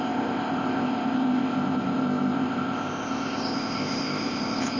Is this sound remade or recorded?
remade